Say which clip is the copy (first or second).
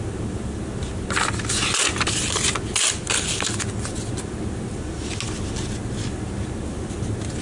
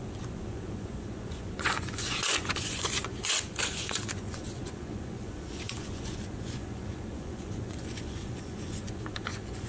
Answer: second